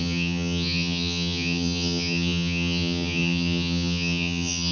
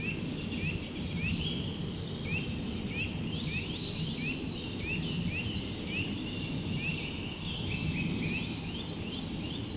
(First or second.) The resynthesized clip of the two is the first